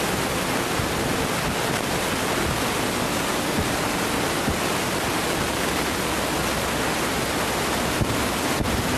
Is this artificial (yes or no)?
no